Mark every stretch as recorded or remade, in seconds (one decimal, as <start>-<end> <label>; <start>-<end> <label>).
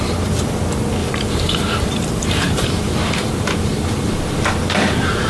0.0-1.0 recorded; 1.0-3.3 remade; 3.3-5.3 recorded